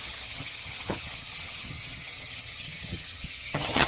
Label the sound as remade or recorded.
remade